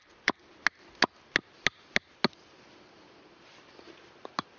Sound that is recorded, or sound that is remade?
recorded